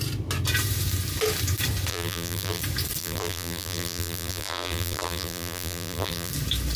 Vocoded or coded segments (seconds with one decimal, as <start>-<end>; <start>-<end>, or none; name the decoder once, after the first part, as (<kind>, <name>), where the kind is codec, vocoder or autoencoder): 1.9-2.6 (vocoder, BigVGAN v2); 3.0-6.3